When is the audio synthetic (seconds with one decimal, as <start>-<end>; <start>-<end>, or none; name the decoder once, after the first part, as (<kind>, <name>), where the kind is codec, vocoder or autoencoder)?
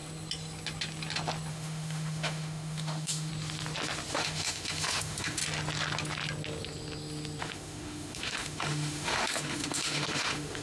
1.5-3.3 (autoencoder, DAC-VAE); 4.1-5.4; 7.4-10.6